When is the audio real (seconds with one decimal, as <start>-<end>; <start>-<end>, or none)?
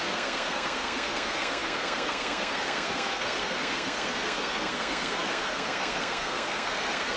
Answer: none